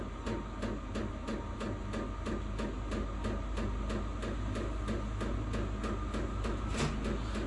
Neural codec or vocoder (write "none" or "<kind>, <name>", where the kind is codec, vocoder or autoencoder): none